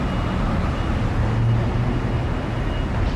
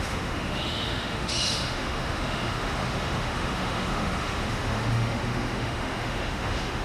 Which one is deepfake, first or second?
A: second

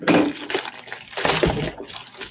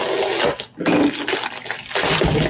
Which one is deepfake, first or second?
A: first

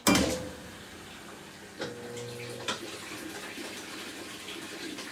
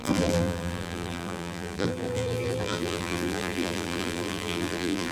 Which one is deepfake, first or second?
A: second